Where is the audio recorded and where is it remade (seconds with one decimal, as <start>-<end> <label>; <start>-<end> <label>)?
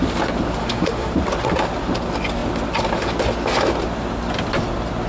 0.0-0.6 recorded; 0.6-1.1 remade; 1.1-5.1 recorded